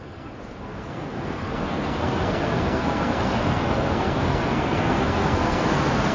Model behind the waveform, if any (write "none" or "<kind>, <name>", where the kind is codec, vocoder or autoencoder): codec, SNAC